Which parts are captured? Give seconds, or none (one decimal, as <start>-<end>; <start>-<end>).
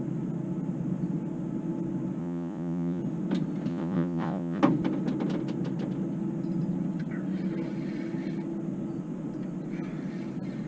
0.0-2.2; 3.0-3.7; 4.6-10.7